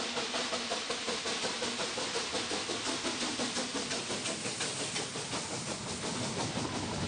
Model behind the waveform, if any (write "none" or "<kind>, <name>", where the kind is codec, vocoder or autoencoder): none